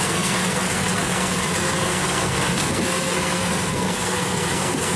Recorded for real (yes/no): no